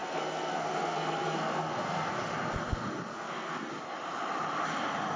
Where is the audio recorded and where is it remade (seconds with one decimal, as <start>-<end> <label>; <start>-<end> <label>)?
0.0-2.1 remade; 2.1-3.1 recorded; 3.1-3.7 remade; 3.7-5.2 recorded